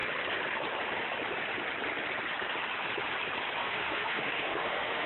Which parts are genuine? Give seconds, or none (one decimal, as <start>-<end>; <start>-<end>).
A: 0.0-3.6